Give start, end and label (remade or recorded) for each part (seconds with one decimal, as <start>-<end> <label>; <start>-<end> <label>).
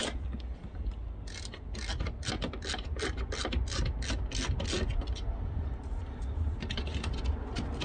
0.0-7.8 recorded